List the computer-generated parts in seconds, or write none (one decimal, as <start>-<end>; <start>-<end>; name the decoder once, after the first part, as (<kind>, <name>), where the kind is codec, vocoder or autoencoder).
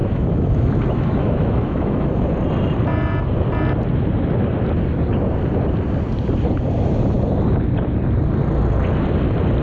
0.0-2.3 (autoencoder, DAC-VAE)